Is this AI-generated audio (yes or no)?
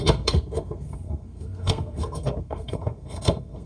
yes